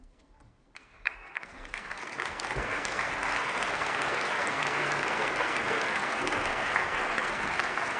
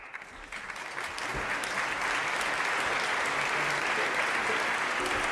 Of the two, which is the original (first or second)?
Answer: second